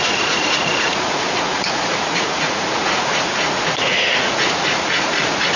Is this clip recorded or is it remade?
remade